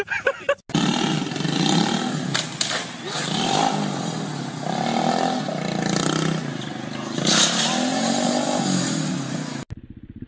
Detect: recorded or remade recorded